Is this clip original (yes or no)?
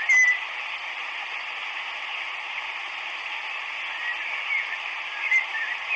yes